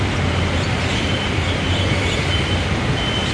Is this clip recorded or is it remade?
recorded